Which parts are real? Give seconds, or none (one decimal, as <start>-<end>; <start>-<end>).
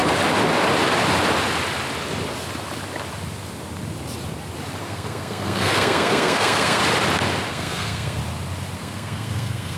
0.0-4.8; 6.8-7.5; 8.2-8.8